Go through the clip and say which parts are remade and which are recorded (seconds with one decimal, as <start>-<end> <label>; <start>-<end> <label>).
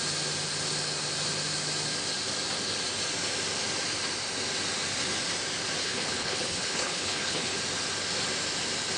0.0-5.8 recorded; 5.8-7.6 remade; 7.6-9.0 recorded